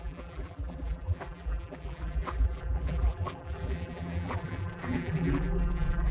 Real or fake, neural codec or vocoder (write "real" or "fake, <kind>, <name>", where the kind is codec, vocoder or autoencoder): fake, vocoder, BigVGAN v2